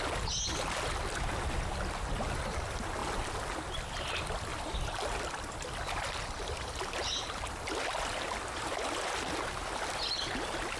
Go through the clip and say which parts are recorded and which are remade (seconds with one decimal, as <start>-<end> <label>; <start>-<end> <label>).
0.0-10.8 recorded